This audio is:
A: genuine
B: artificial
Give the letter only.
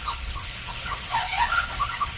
B